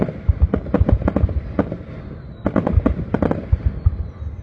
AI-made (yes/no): no